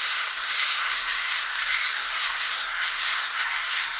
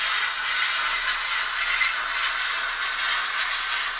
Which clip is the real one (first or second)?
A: second